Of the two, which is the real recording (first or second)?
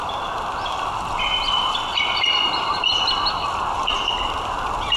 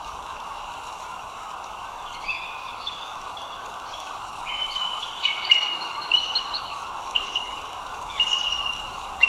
first